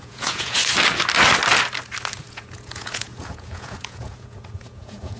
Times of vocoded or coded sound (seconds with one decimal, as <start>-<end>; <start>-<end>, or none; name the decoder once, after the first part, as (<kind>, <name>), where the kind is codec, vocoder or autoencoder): 0.0-0.6 (vocoder, Vocos); 2.2-5.2